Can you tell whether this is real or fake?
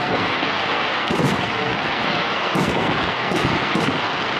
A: fake